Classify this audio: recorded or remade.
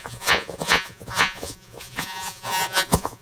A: remade